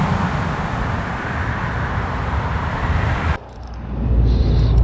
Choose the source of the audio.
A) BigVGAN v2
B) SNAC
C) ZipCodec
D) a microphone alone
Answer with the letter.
D